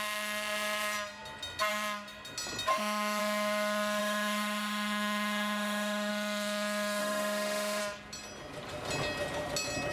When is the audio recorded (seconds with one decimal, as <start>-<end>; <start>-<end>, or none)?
0.0-2.7; 3.2-4.0; 6.1-7.0; 7.8-9.9